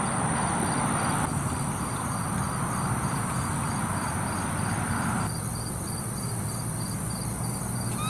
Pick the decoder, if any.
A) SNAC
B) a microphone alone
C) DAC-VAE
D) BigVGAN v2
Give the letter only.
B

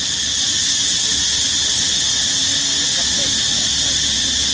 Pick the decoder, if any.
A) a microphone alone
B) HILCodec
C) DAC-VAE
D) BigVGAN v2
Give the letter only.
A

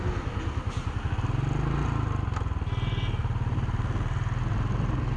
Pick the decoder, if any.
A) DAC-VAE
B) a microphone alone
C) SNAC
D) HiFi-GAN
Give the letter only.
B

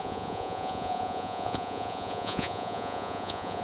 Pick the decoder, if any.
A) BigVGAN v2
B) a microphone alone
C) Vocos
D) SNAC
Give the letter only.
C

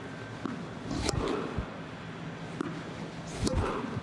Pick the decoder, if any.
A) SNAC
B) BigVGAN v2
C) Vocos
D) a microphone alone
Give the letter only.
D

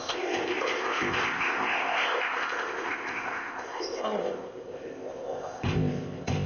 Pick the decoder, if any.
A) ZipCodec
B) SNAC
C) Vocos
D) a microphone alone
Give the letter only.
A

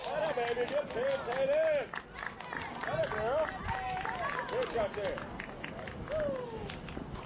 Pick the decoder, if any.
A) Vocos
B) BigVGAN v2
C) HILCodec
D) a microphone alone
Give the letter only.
D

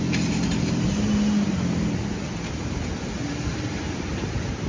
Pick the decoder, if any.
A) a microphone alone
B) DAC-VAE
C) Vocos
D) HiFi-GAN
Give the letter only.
A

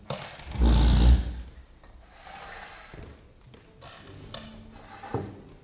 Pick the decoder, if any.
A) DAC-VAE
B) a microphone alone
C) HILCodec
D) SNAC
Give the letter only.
B